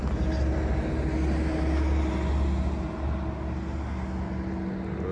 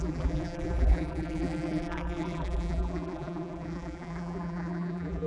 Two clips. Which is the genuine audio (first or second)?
first